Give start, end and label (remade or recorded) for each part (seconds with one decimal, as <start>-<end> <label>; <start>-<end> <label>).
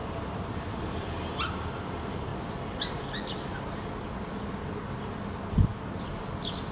0.0-0.5 recorded; 0.5-2.3 remade; 2.3-6.0 recorded; 6.0-6.7 remade